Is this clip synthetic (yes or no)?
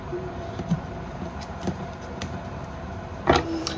yes